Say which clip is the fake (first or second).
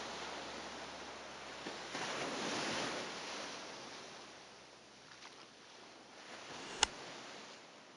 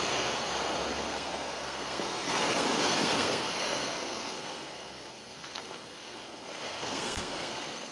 second